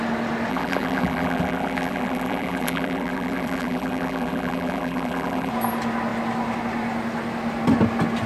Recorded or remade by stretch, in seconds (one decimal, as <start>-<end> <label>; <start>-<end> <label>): 0.0-0.5 recorded; 0.5-5.5 remade; 5.5-8.3 recorded